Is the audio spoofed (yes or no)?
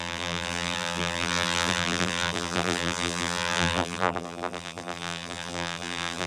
yes